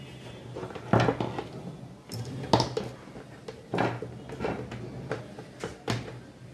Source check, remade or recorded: recorded